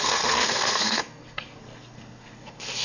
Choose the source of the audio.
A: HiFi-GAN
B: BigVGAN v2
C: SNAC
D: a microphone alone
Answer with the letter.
C